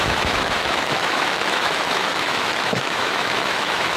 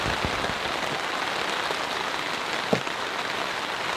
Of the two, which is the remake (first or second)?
first